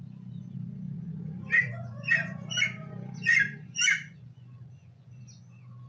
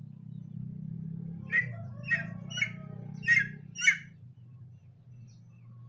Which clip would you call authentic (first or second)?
second